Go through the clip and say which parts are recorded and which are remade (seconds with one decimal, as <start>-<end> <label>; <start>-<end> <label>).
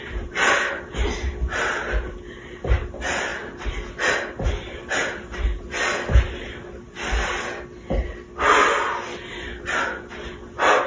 0.0-0.9 remade; 0.9-10.9 recorded